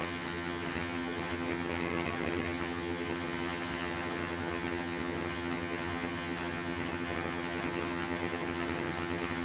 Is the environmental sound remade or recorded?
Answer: remade